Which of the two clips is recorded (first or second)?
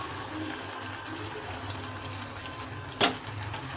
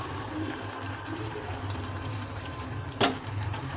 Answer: first